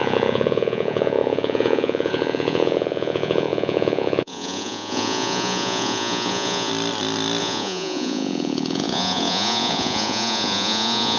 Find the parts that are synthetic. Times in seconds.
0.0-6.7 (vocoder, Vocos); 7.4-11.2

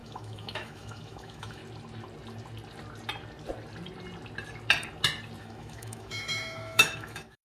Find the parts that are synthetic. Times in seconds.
0.0-1.6 (autoencoder, DAC-VAE); 5.4-7.5

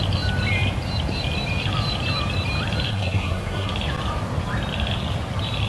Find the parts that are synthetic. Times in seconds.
2.9-3.7 (codec, SNAC)

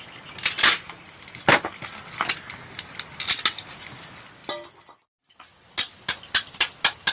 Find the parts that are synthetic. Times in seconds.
none

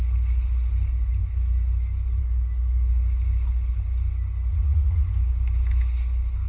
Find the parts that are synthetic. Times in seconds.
4.5-5.1 (vocoder, Vocos)

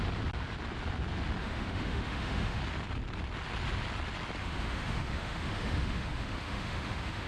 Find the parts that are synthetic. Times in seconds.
1.4-2.6 (autoencoder, DAC-VAE); 4.4-7.3

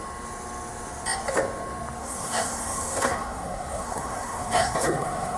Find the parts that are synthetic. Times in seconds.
2.0-5.4 (codec, SNAC)

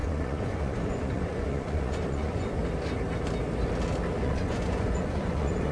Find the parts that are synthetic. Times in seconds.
0.0-2.6 (vocoder, Vocos); 4.2-5.7